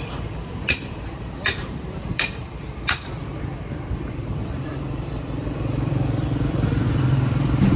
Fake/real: fake